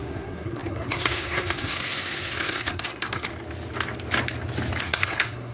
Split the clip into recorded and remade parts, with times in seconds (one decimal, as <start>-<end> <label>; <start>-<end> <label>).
0.0-3.3 remade; 3.3-4.8 recorded; 4.8-5.5 remade